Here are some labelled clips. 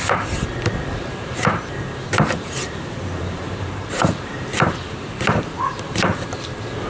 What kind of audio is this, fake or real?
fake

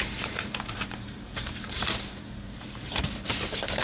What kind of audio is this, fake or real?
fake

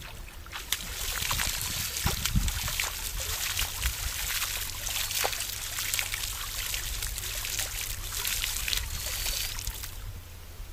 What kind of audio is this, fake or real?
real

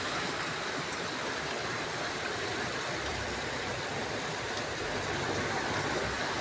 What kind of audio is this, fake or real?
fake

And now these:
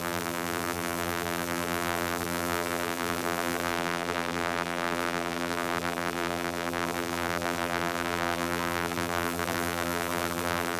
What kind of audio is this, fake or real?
fake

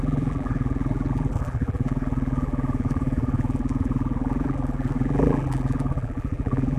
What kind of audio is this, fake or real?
fake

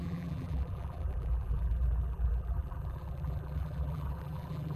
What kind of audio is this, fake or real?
fake